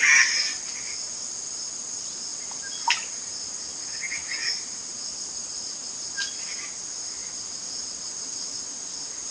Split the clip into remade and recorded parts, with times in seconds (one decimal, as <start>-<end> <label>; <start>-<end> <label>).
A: 0.0-9.3 recorded